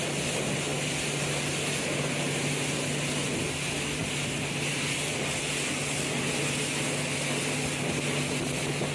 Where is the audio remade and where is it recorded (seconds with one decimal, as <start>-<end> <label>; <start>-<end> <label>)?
0.0-8.9 recorded